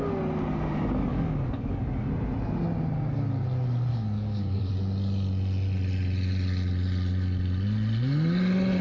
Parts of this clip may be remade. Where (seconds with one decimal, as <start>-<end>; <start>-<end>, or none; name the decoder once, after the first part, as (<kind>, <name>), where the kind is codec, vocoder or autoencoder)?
1.1-1.9 (codec, DAC); 3.9-4.7